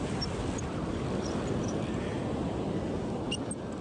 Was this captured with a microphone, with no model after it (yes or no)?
yes